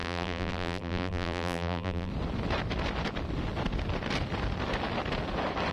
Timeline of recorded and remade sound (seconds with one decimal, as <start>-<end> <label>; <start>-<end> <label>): 0.0-2.1 remade; 2.1-5.7 recorded